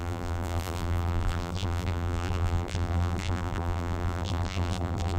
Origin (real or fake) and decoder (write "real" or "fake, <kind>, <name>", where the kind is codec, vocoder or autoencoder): fake, vocoder, BigVGAN v2